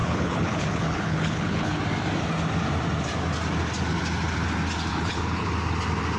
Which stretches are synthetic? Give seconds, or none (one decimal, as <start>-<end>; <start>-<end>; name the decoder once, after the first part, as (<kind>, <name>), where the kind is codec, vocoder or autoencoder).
0.0-1.8 (codec, HILCodec); 4.9-5.5